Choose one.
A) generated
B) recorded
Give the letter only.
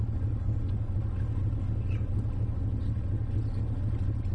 B